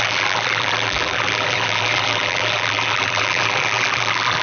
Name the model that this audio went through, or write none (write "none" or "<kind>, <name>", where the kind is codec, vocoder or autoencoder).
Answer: vocoder, BigVGAN v2